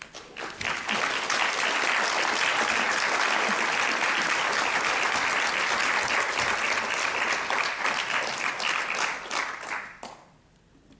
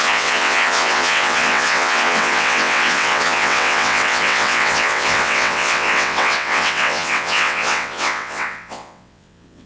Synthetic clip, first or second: second